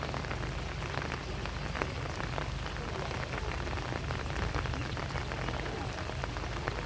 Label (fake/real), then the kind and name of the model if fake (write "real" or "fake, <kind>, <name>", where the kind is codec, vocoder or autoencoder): real